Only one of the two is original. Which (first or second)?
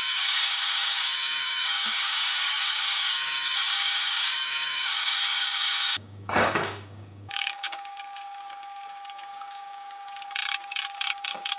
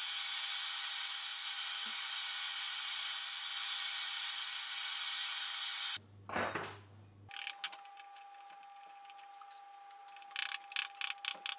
second